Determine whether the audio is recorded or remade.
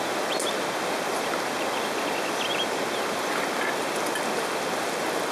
recorded